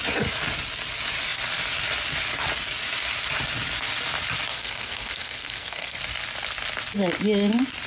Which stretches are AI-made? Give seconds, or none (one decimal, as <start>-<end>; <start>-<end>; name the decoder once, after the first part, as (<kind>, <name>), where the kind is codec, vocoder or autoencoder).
4.5-6.0 (codec, SNAC)